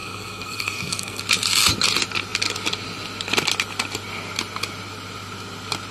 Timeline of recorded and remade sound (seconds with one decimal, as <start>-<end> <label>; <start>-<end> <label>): 0.0-1.2 remade; 1.2-5.9 recorded